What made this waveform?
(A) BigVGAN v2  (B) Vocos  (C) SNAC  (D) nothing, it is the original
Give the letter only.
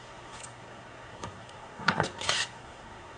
C